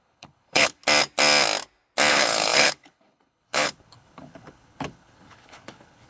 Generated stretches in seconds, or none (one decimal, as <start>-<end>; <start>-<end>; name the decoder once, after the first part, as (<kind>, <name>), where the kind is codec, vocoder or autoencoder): 0.0-0.8 (codec, HILCodec); 2.1-6.1